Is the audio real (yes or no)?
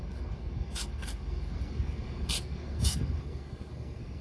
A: no